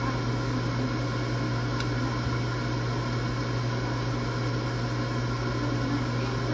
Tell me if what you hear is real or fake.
real